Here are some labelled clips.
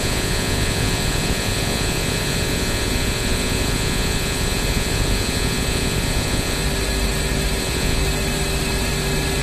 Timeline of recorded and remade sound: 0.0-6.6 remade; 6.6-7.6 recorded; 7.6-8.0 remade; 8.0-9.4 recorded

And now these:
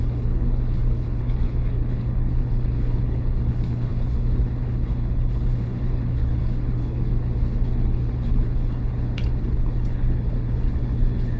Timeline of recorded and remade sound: 0.0-11.4 remade

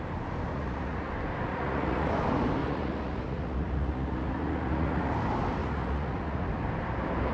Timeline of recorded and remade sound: 0.0-0.5 recorded; 0.5-1.1 remade; 1.1-1.5 recorded; 1.5-2.1 remade; 2.1-2.6 recorded; 2.6-5.1 remade; 5.1-5.6 recorded; 5.6-6.5 remade; 6.5-7.3 recorded

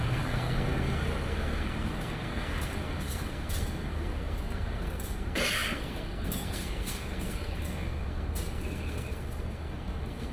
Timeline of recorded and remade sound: 0.0-10.3 remade

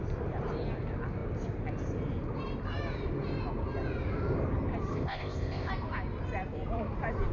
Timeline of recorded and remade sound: 0.0-4.9 recorded; 4.9-5.7 remade; 5.7-7.3 recorded

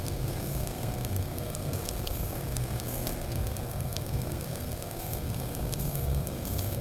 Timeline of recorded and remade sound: 0.0-6.8 remade